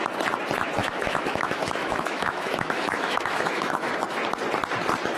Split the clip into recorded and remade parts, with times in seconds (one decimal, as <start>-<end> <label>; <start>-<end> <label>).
0.0-0.8 recorded; 0.8-3.9 remade; 3.9-5.2 recorded